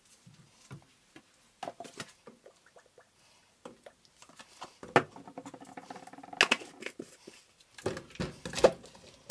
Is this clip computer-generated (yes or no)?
no